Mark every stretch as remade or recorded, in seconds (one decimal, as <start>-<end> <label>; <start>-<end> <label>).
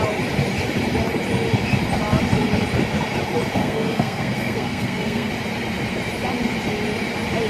0.0-3.6 recorded; 3.6-5.3 remade; 5.3-7.5 recorded